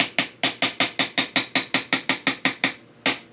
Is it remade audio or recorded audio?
recorded